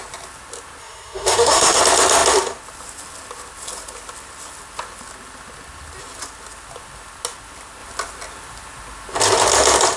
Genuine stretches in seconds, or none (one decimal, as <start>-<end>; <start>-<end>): 0.0-0.8; 1.8-10.0

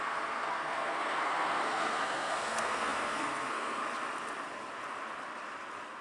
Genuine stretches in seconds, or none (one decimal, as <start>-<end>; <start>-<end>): 3.8-6.0

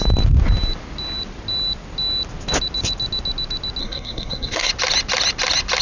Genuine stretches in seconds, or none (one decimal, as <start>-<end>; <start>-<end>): 0.0-3.8; 4.7-5.8

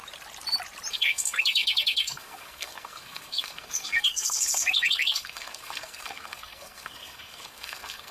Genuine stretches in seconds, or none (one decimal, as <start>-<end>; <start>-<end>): 0.0-0.9

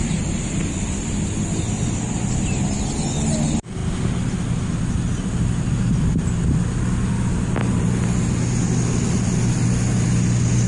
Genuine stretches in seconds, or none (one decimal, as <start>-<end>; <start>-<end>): 0.0-10.7

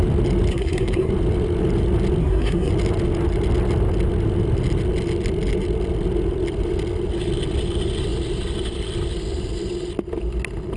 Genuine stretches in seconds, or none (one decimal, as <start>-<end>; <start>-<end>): 0.0-0.5; 1.1-2.2; 2.7-10.8